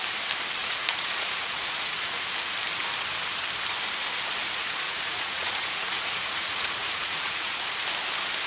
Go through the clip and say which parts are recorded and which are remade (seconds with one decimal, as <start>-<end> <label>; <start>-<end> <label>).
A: 0.0-0.6 recorded; 0.6-2.3 remade; 2.3-4.4 recorded; 4.4-7.5 remade; 7.5-8.5 recorded